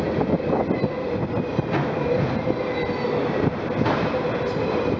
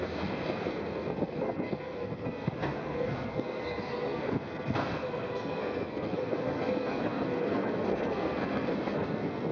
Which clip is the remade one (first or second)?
second